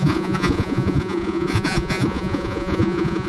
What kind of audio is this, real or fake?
fake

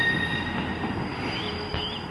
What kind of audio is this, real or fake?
real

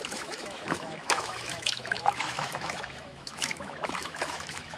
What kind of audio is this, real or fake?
fake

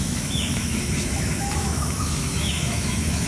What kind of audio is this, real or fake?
fake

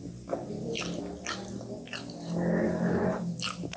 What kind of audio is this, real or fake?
real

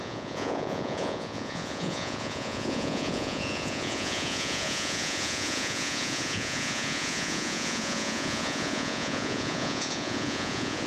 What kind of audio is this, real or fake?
fake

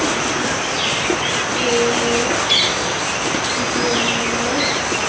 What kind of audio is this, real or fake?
real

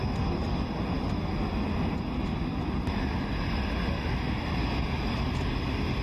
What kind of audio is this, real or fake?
real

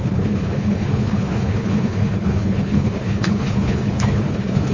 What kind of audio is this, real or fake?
fake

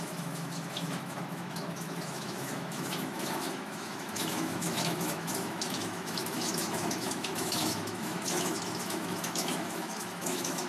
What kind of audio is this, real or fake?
fake